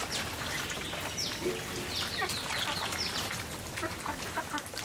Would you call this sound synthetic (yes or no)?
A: no